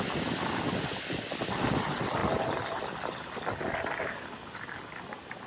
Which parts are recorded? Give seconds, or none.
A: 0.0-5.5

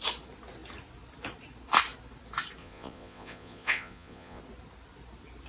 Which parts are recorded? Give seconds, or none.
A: 0.0-2.6; 4.4-5.5

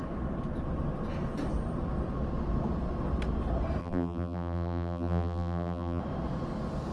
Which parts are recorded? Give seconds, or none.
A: 0.0-3.8; 6.0-6.9

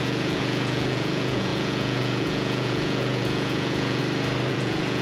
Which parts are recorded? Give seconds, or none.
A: 4.0-4.5

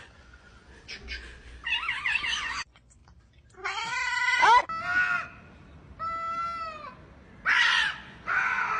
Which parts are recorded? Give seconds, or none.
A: 0.6-1.9; 3.0-7.5

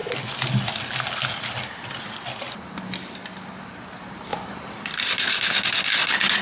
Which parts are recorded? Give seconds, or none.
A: 0.0-6.4

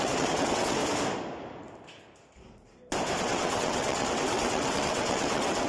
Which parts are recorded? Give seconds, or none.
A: 0.8-3.2

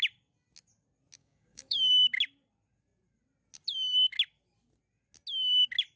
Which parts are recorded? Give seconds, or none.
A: 0.0-1.2; 1.9-6.0